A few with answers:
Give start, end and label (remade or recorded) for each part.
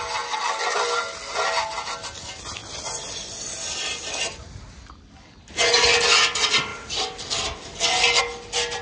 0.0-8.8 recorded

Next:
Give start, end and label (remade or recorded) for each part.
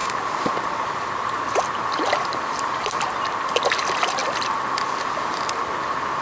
0.0-1.6 remade; 1.6-2.1 recorded; 2.1-2.8 remade; 2.8-6.2 recorded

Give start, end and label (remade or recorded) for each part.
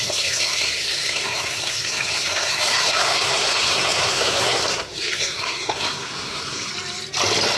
0.0-6.7 remade; 6.7-7.6 recorded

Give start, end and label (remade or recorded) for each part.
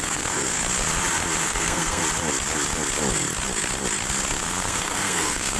0.0-0.6 remade; 0.6-1.4 recorded; 1.4-2.0 remade; 2.0-4.4 recorded; 4.4-5.6 remade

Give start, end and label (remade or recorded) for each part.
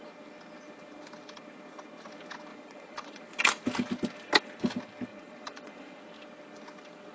0.0-2.5 recorded; 2.5-3.2 remade; 3.2-5.1 recorded; 5.1-6.0 remade; 6.0-7.1 recorded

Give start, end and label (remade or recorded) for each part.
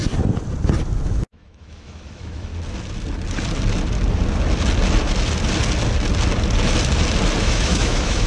0.0-1.1 recorded; 1.1-2.5 remade; 2.5-7.4 recorded; 7.4-8.3 remade